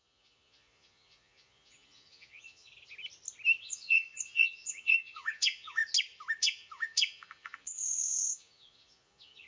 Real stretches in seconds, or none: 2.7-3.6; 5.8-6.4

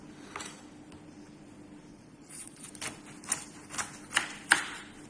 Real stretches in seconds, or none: 0.0-1.9; 2.7-5.1

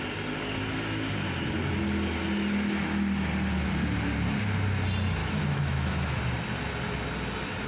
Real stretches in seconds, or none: 0.0-5.2; 6.2-7.7